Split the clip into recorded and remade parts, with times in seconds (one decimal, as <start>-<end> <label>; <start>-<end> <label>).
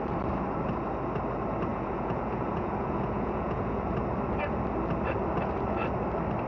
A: 0.0-1.7 recorded; 1.7-3.9 remade; 3.9-6.5 recorded